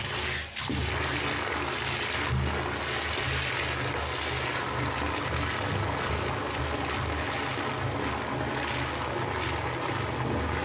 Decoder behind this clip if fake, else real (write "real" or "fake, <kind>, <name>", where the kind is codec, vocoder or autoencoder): real